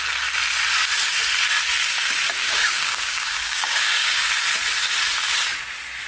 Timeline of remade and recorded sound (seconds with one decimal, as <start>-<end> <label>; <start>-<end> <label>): 0.0-2.4 recorded; 2.4-4.3 remade; 4.3-6.1 recorded